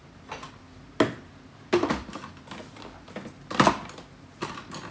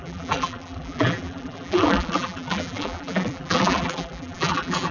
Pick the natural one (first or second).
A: first